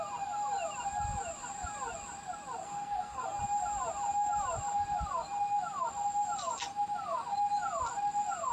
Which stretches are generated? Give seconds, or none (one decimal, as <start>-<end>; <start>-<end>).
2.6-3.4